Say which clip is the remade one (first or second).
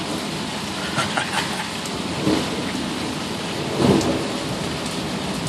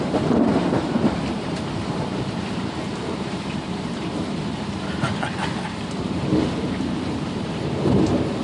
second